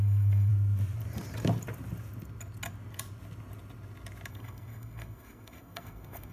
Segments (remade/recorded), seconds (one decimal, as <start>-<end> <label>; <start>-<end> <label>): 0.0-0.5 remade; 0.5-4.3 recorded; 4.3-6.3 remade